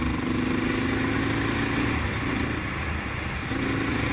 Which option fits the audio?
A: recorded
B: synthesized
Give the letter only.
A